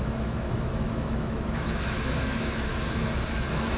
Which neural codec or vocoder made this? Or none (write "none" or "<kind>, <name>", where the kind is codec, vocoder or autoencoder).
autoencoder, DAC-VAE